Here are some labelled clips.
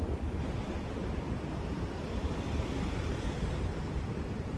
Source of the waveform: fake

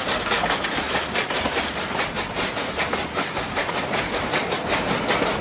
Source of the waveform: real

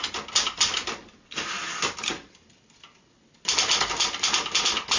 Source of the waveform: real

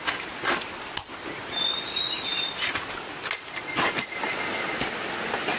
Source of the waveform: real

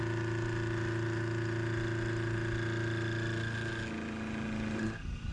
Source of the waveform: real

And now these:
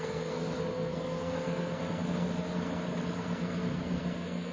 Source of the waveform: fake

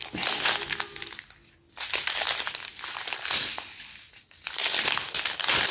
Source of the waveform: real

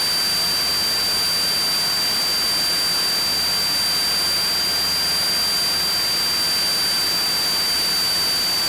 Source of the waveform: real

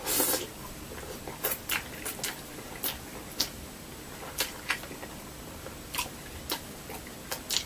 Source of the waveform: real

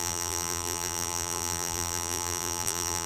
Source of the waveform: fake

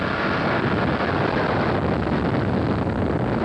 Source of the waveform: real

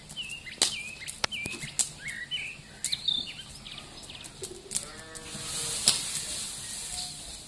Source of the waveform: real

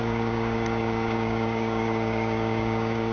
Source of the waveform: fake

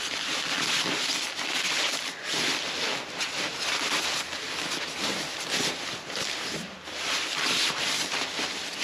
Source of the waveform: real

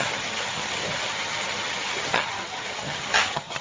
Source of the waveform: fake